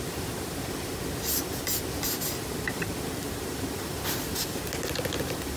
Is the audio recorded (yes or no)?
yes